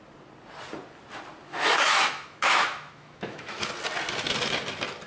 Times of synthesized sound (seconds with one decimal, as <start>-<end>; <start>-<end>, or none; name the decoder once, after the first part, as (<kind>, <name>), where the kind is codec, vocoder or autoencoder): 1.5-3.7 (autoencoder, DAC-VAE)